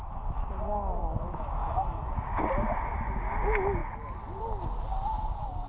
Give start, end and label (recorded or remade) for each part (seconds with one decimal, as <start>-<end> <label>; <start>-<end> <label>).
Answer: 0.0-2.4 remade; 2.4-5.7 recorded